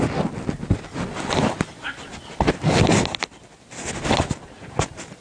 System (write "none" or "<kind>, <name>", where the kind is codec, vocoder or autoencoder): none